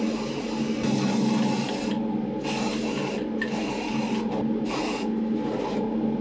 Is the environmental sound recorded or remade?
recorded